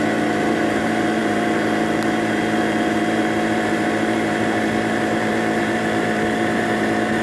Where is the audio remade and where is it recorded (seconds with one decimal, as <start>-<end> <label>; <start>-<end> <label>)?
0.0-7.2 remade

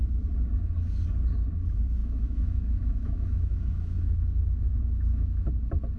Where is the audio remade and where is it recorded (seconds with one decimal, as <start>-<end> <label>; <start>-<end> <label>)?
0.0-2.0 recorded; 2.0-5.5 remade; 5.5-6.0 recorded